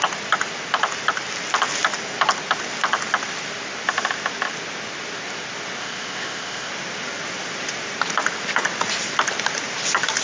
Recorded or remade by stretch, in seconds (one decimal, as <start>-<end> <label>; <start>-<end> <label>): 0.0-5.8 recorded; 5.8-6.7 remade; 6.7-10.2 recorded